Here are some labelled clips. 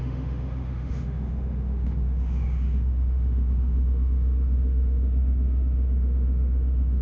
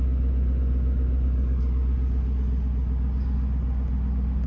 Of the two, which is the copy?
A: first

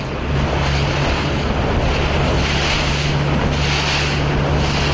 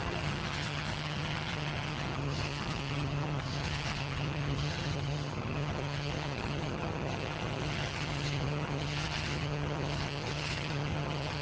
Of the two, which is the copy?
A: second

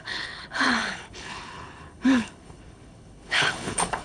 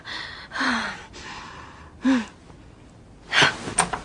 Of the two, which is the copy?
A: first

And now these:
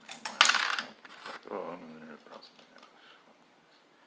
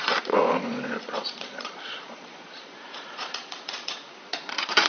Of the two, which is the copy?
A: second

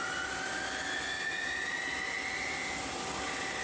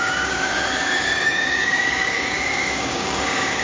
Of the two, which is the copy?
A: second